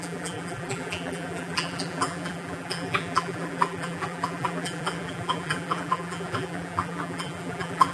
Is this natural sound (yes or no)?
no